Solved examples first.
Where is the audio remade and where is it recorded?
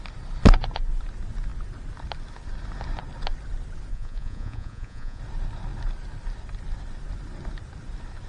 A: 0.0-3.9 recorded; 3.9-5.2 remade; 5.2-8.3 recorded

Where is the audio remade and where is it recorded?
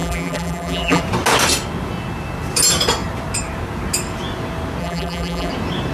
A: 0.0-1.0 remade; 1.0-4.8 recorded; 4.8-5.5 remade; 5.5-5.9 recorded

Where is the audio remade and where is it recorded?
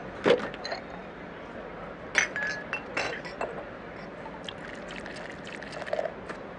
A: 0.0-6.6 recorded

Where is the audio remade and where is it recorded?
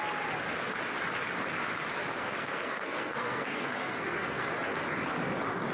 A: 0.0-2.1 recorded; 2.1-4.5 remade; 4.5-5.7 recorded